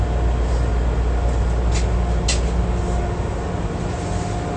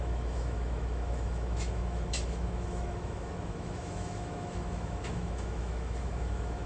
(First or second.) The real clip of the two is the first